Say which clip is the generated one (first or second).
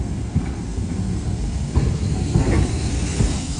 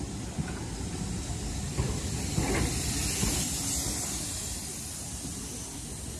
first